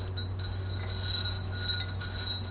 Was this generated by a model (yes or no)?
no